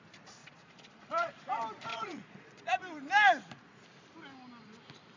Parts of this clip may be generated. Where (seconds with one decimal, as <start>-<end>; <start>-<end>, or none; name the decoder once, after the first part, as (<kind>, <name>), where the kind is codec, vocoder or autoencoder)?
0.4-1.4 (vocoder, Vocos); 1.9-2.6

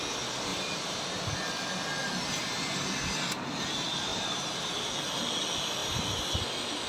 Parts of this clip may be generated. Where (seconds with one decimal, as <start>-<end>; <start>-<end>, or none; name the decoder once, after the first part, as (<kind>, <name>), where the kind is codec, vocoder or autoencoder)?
0.5-1.2 (vocoder, BigVGAN v2); 2.0-3.2; 4.1-4.9; 5.8-6.3